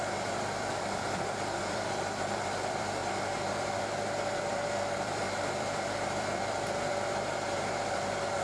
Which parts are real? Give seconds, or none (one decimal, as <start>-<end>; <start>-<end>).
none